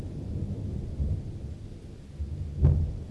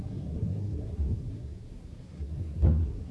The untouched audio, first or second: first